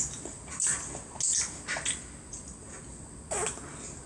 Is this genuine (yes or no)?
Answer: yes